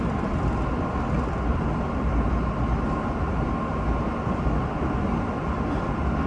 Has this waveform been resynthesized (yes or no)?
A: yes